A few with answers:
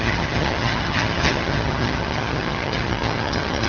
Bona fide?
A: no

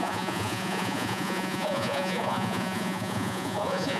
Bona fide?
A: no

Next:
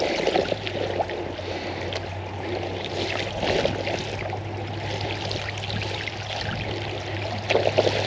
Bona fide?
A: yes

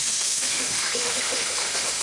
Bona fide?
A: no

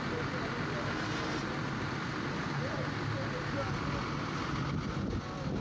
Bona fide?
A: yes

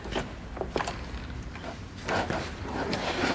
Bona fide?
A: yes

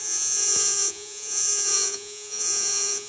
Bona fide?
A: no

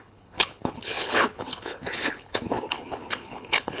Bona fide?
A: no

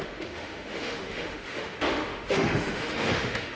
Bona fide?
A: no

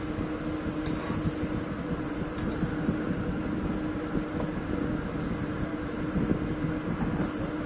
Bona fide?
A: yes